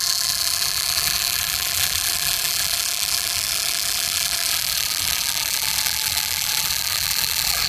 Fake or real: fake